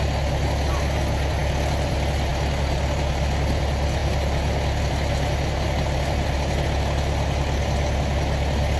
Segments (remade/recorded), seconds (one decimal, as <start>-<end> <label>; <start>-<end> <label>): 0.0-8.8 recorded